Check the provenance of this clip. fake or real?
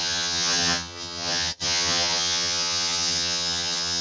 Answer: fake